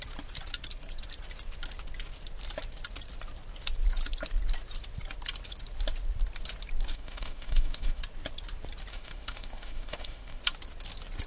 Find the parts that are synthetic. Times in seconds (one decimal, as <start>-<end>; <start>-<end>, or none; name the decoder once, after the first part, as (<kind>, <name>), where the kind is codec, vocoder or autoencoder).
6.9-8.0 (autoencoder, DAC-VAE); 8.9-10.4